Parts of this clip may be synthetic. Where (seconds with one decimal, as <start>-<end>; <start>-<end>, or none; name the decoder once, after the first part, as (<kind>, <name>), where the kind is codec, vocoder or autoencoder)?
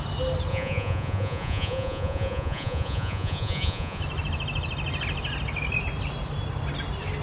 0.5-4.0 (vocoder, Vocos)